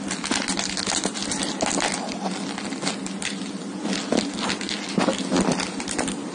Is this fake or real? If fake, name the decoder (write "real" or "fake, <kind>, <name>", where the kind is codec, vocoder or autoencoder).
real